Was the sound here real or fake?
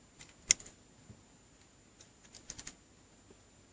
real